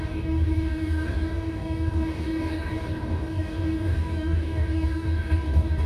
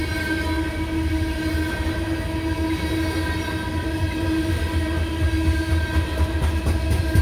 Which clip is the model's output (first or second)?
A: first